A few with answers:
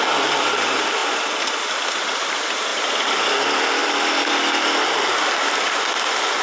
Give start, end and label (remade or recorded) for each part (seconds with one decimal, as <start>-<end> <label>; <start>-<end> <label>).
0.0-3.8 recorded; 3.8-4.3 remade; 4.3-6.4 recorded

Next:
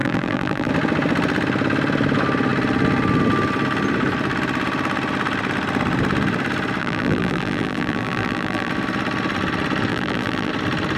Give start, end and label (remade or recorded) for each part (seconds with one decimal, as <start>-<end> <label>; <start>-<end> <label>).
0.0-0.7 remade; 0.7-6.8 recorded; 6.8-8.7 remade; 8.7-9.9 recorded; 9.9-10.5 remade; 10.5-11.0 recorded

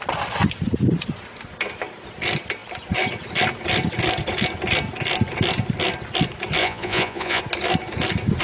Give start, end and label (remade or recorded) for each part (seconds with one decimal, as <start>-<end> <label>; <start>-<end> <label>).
0.0-6.6 recorded; 6.6-7.4 remade; 7.4-8.4 recorded

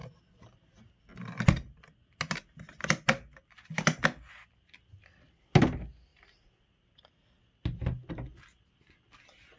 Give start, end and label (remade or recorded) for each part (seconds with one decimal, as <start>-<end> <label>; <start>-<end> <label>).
0.0-9.6 recorded

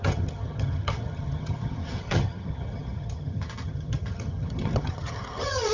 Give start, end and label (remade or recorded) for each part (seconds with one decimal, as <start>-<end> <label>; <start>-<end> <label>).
0.0-5.7 remade

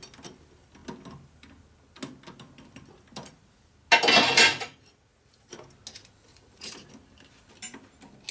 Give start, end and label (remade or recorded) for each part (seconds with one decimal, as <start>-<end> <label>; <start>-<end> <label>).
0.0-4.5 recorded; 4.5-5.6 remade; 5.6-6.3 recorded; 6.3-6.9 remade; 6.9-8.3 recorded

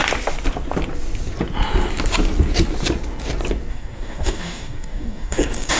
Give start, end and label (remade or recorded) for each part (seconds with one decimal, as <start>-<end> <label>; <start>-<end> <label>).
0.0-3.7 recorded; 3.7-5.8 remade